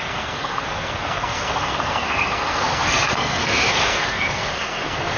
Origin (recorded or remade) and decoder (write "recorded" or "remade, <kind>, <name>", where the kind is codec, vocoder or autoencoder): remade, codec, SNAC